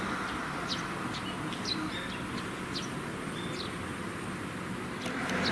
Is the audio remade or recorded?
recorded